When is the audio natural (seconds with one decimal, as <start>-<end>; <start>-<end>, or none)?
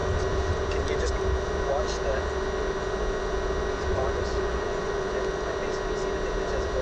0.0-3.9; 5.1-6.8